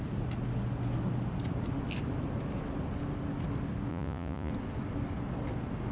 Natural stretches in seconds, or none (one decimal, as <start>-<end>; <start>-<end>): 0.0-3.9; 4.5-5.9